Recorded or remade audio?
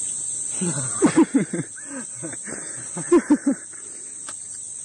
recorded